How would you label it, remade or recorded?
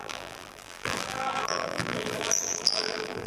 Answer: remade